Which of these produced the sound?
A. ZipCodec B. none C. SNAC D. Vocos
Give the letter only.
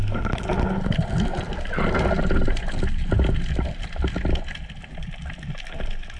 B